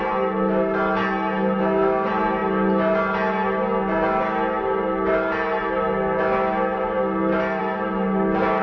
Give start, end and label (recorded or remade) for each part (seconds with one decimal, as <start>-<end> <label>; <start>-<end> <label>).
0.0-8.6 recorded